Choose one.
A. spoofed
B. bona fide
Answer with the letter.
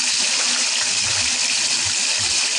B